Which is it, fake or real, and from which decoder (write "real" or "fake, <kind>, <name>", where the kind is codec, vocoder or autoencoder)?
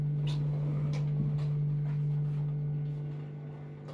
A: real